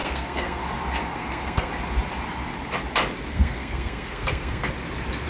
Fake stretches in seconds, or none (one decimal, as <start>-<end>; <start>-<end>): 0.0-0.6; 1.0-1.7; 3.3-4.7